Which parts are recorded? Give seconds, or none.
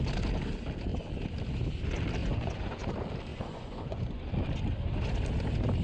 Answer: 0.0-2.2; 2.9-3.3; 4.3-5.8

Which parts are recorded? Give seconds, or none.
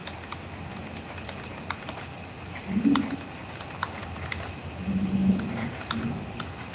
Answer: 0.0-6.7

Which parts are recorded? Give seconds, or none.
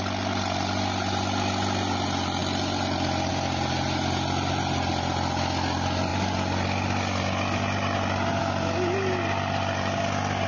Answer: 0.0-10.5